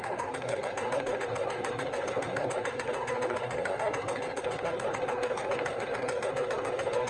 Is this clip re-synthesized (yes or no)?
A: yes